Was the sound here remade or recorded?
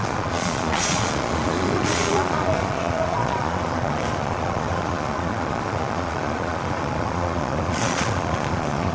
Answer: remade